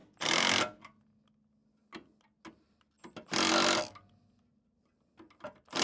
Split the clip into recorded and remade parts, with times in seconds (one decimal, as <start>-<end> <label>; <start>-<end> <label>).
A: 0.0-5.8 recorded